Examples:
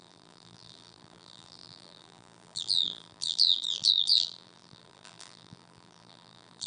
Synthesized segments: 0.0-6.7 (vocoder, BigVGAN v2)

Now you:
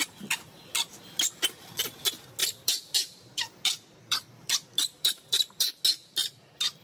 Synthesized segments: 2.4-5.8 (vocoder, BigVGAN v2)

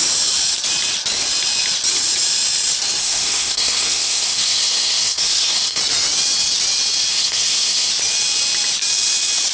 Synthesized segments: 3.0-5.8 (codec, SNAC); 7.1-7.9

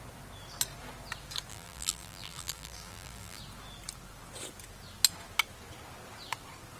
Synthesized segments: 1.5-3.4 (vocoder, BigVGAN v2)

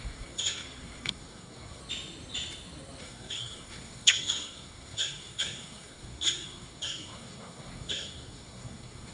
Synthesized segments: 0.0-1.8 (codec, SNAC); 3.0-9.1

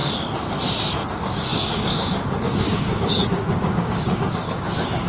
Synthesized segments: 1.1-5.1 (codec, DAC)

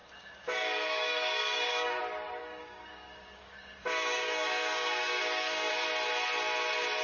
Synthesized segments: 0.0-2.0 (codec, DAC); 2.4-5.7

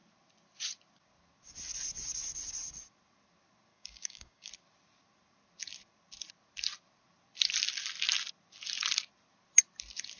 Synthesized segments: 3.7-4.5 (codec, DAC)